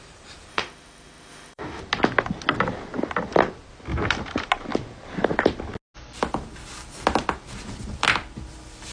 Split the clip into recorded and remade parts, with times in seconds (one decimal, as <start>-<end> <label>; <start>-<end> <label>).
0.0-0.5 recorded; 0.5-1.8 remade; 1.8-8.9 recorded